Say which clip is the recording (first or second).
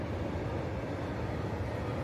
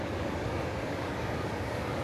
first